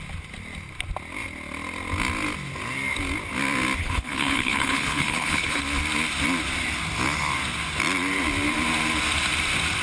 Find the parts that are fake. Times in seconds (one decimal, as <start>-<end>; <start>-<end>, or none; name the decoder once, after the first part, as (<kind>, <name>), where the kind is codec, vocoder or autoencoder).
3.8-5.6 (codec, HILCodec)